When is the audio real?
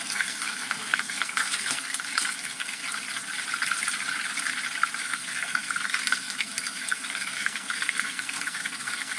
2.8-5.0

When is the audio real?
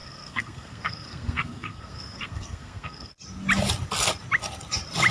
3.1-5.1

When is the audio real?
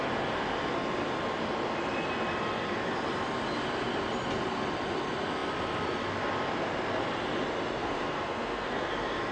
0.0-7.8; 8.9-9.3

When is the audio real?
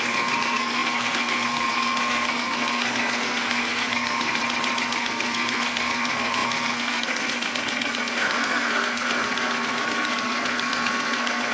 4.4-5.0